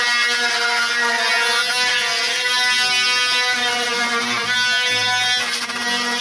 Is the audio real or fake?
real